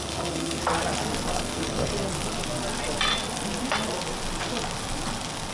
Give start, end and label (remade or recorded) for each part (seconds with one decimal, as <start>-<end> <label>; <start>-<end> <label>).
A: 0.0-0.6 remade; 0.6-1.3 recorded; 1.3-1.9 remade; 1.9-5.5 recorded